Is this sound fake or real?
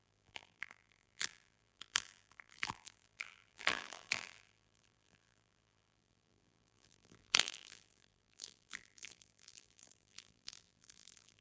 fake